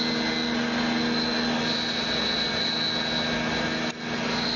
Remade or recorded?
recorded